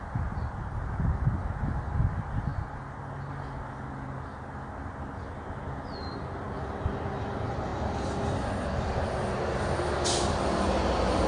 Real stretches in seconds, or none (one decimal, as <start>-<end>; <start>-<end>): 0.0-11.3